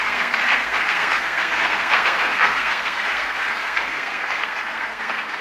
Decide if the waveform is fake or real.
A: fake